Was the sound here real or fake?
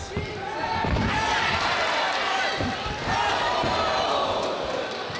real